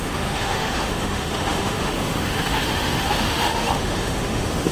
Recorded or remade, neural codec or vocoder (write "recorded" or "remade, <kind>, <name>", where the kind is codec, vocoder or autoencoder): remade, autoencoder, DAC-VAE